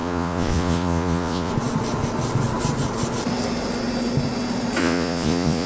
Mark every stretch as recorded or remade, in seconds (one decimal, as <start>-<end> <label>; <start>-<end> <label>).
0.0-1.5 remade; 1.5-4.8 recorded; 4.8-5.7 remade